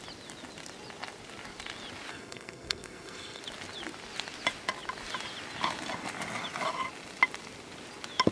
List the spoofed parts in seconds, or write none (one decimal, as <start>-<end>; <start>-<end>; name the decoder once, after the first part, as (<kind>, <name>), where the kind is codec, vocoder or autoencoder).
2.1-3.4 (codec, SNAC)